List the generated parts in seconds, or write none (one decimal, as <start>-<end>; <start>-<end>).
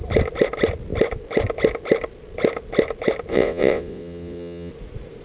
3.3-4.7